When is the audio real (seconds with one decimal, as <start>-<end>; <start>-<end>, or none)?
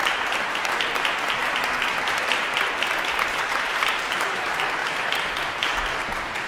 1.4-2.1; 4.8-6.5